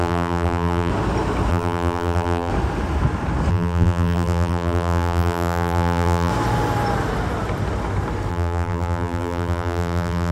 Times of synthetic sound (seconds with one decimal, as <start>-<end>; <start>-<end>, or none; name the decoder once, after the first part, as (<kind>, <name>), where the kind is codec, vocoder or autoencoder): 0.0-0.9 (vocoder, BigVGAN v2); 1.5-2.5; 3.5-6.3; 8.3-10.3